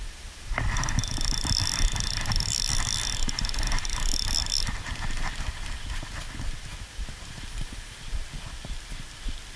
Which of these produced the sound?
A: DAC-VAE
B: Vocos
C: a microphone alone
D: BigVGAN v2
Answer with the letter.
C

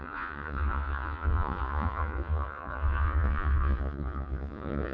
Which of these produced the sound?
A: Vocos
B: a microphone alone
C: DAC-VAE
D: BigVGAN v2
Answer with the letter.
A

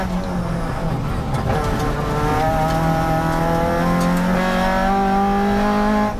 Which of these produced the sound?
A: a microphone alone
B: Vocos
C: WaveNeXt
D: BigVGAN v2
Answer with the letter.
A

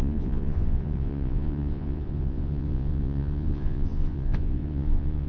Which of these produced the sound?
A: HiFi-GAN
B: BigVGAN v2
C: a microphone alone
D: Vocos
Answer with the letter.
D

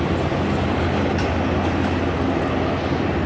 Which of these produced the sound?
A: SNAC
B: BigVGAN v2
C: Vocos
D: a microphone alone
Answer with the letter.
D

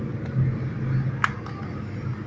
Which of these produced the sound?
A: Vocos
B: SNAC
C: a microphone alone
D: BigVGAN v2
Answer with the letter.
C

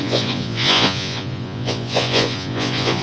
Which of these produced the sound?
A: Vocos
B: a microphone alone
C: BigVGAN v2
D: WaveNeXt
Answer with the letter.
A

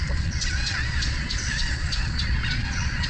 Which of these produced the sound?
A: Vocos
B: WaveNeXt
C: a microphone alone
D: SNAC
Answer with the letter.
A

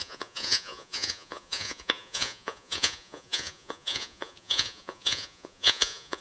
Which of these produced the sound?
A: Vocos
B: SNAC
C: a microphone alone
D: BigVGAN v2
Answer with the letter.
A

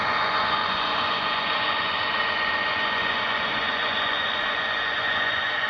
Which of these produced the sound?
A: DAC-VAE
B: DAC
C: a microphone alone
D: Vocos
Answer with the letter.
D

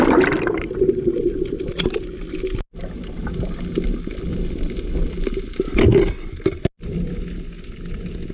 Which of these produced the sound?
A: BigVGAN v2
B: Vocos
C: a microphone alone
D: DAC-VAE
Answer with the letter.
C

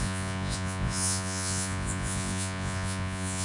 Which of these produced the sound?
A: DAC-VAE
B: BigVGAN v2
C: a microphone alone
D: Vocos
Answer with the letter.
D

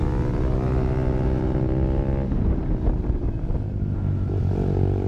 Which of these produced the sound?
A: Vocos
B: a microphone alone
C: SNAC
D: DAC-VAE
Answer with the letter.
B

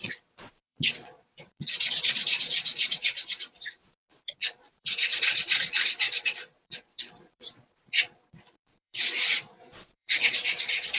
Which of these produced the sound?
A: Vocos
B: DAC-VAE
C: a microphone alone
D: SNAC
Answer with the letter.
A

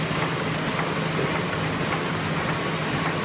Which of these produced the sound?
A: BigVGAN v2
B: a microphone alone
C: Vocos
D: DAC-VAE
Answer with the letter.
B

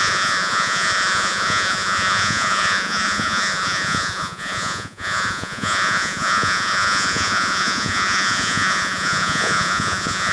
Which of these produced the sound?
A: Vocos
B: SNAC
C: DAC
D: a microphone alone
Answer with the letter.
A